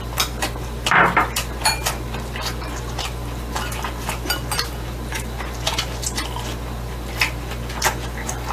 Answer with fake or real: fake